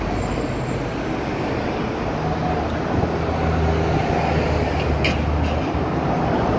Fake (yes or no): no